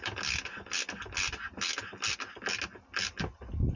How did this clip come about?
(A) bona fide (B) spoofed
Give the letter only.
A